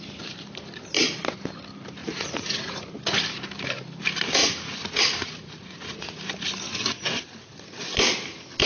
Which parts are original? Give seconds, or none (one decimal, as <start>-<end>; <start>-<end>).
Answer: 0.0-2.0; 3.0-4.4; 6.2-8.7